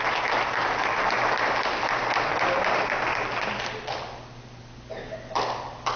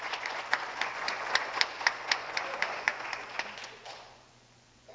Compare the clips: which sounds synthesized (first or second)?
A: second